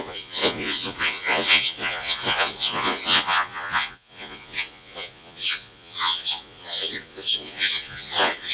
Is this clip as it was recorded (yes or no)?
no